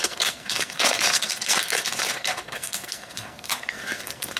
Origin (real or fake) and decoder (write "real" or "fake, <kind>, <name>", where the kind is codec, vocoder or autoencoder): fake, codec, SNAC